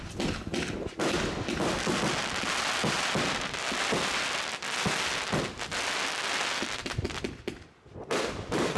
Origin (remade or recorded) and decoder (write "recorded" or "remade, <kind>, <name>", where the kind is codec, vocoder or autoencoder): recorded